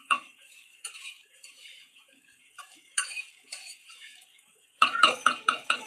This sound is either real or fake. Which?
fake